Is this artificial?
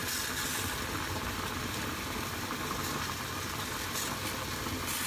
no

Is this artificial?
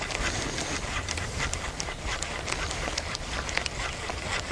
no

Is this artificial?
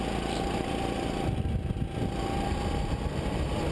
no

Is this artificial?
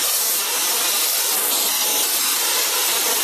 no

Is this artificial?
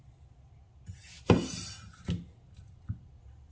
no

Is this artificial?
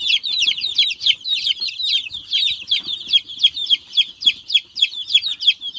yes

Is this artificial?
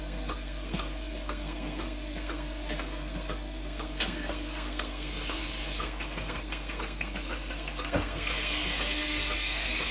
yes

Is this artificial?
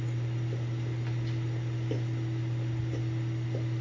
no